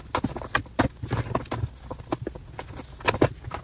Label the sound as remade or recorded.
recorded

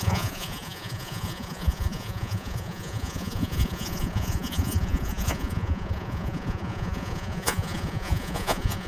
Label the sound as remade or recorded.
remade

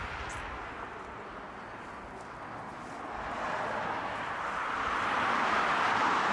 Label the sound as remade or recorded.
recorded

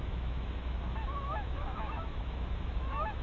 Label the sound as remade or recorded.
remade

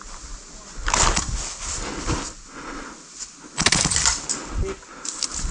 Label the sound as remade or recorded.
recorded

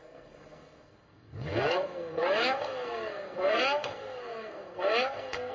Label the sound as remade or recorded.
remade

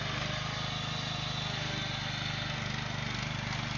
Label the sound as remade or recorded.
recorded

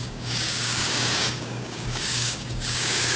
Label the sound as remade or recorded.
remade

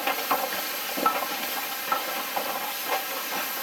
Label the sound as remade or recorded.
recorded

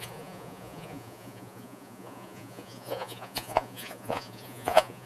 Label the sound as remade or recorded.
remade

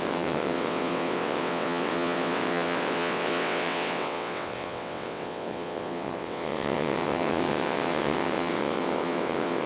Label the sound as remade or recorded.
remade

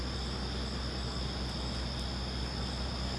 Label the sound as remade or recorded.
recorded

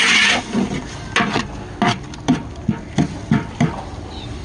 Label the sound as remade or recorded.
recorded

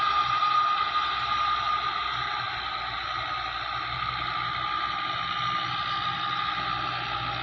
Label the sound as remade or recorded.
recorded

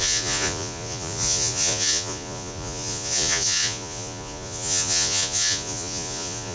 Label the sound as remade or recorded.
remade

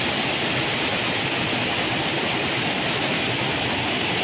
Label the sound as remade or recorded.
recorded